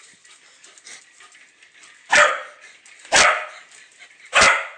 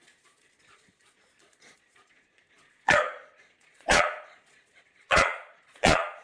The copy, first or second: second